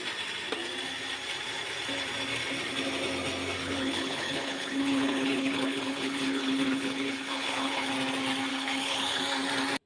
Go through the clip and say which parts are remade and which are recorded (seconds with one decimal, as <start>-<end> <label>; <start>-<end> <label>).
0.0-3.6 recorded; 3.6-7.9 remade; 7.9-8.5 recorded; 8.5-9.2 remade; 9.2-9.9 recorded